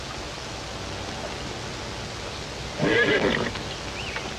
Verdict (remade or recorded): recorded